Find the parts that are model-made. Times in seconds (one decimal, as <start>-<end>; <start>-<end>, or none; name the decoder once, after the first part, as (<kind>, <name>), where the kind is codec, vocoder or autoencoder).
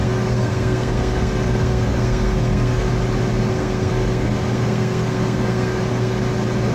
0.0-2.9 (codec, SNAC); 3.5-6.2